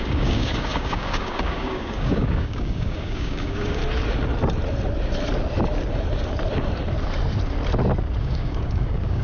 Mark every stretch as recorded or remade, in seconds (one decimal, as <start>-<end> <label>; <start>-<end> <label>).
0.0-3.8 remade; 3.8-8.2 recorded; 8.2-9.2 remade